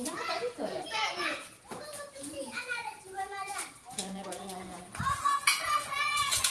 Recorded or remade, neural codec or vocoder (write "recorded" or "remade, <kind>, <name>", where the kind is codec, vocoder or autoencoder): remade, vocoder, Vocos